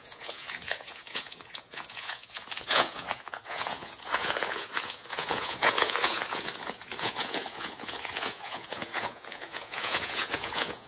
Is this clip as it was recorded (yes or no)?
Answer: no